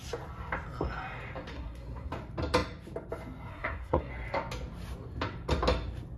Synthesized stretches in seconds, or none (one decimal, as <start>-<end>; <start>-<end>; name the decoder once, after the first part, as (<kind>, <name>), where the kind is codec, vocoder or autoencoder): 1.5-2.1 (codec, SNAC); 3.5-4.1